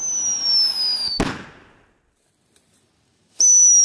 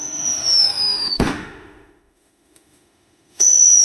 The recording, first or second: first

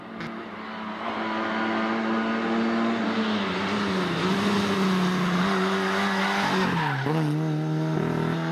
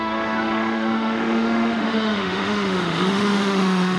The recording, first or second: first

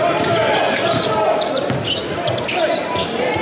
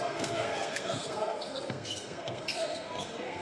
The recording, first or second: first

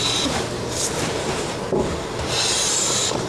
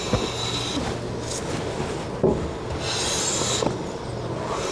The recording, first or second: second